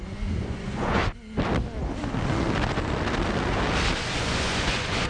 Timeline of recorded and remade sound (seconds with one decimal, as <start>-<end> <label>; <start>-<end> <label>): 0.0-1.0 remade; 1.0-4.0 recorded; 4.0-5.1 remade